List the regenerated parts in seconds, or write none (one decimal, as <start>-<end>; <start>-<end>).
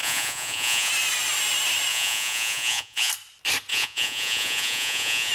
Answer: 0.0-0.9; 1.9-3.1; 3.7-5.3